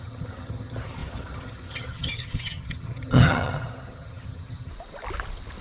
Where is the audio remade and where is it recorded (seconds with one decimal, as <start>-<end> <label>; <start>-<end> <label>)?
0.0-4.7 remade; 4.7-5.6 recorded